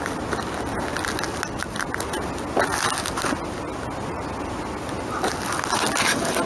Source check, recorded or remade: recorded